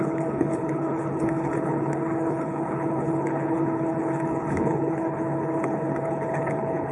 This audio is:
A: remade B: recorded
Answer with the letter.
A